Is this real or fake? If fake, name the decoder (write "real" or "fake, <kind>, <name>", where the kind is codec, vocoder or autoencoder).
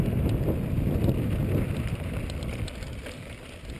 real